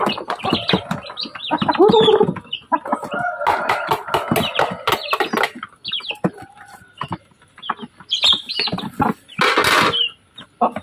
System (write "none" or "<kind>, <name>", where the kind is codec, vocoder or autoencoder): none